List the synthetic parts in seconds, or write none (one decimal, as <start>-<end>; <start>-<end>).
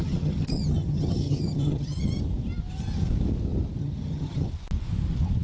0.0-2.1; 3.8-4.5